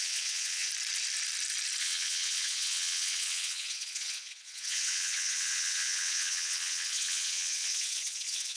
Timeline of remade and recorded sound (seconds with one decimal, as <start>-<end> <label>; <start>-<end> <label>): 0.0-0.7 remade; 0.7-1.8 recorded; 1.8-8.6 remade